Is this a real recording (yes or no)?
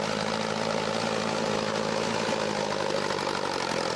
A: yes